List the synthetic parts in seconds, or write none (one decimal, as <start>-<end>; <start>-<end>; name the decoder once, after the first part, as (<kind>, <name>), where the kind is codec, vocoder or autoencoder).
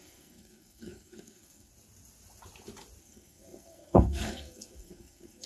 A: 0.0-1.7 (codec, SNAC); 3.0-5.5